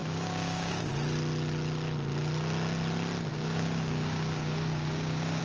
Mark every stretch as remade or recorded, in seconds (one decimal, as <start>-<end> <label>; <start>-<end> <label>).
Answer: 0.0-0.9 remade; 0.9-3.3 recorded; 3.3-5.4 remade